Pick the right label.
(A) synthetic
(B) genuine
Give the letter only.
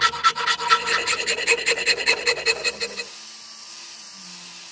B